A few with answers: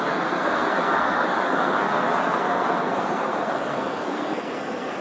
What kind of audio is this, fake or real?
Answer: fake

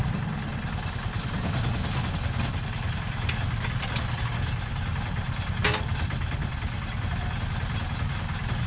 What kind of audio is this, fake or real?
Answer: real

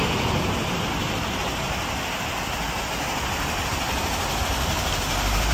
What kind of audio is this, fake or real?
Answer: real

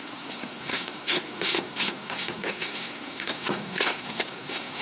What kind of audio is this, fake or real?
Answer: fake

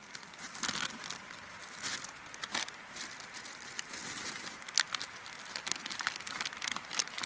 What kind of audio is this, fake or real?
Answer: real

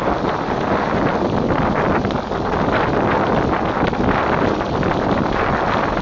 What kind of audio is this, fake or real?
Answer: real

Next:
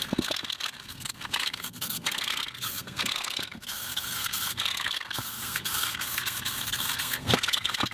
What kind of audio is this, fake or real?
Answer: fake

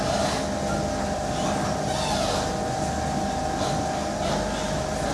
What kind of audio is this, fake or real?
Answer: real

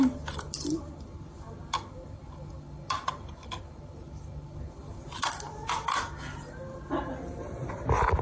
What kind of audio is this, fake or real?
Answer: real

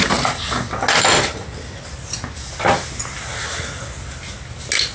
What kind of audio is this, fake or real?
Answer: real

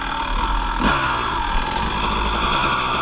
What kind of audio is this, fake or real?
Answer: real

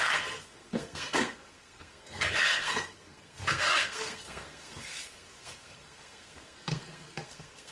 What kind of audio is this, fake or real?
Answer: fake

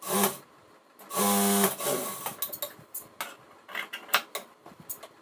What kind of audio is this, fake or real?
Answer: real